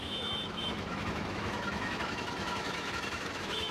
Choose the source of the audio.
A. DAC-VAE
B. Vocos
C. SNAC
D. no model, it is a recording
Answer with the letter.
A